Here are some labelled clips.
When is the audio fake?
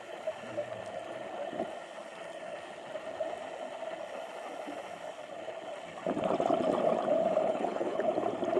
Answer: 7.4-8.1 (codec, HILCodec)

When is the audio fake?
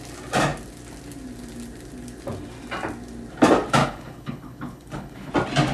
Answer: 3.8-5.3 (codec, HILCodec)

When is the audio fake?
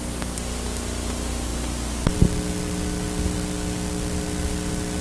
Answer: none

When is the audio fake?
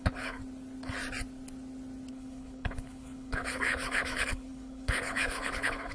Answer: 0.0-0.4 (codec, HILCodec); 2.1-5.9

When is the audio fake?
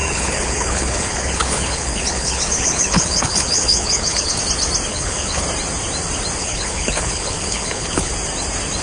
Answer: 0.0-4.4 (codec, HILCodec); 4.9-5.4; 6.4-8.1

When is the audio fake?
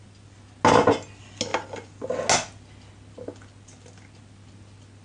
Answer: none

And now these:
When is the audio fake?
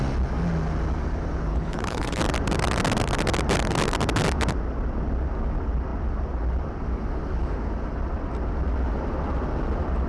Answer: 1.5-2.2 (codec, HILCodec)